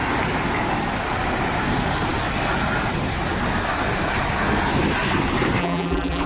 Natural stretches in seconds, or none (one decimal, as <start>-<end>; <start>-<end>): 0.0-5.6